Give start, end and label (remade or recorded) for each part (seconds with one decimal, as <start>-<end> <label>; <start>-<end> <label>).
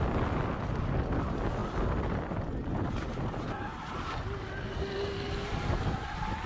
0.0-6.5 recorded